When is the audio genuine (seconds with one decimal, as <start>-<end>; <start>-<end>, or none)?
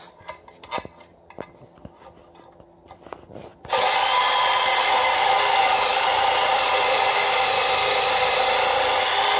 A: 0.0-9.4